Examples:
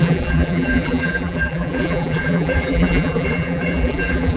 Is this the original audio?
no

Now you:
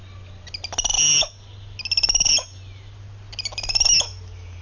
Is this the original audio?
yes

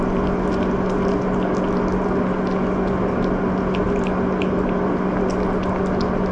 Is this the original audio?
yes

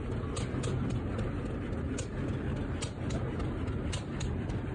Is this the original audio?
yes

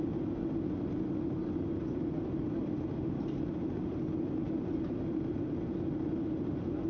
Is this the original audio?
yes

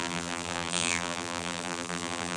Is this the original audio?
no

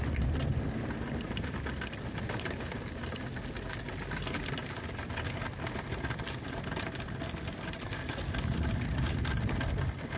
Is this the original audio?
yes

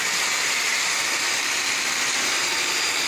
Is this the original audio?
no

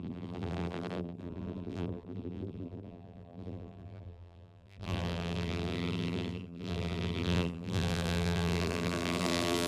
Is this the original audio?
no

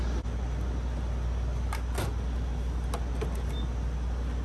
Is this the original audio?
yes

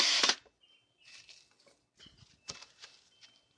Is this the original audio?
yes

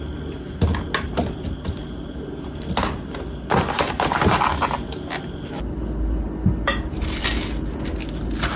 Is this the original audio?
yes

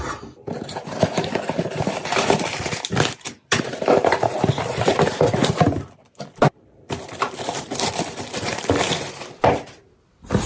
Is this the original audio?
no